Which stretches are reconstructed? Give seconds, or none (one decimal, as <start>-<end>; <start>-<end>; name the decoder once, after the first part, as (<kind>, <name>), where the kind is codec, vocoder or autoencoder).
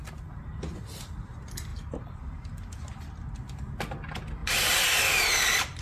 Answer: 1.7-2.3 (vocoder, BigVGAN v2); 4.4-5.0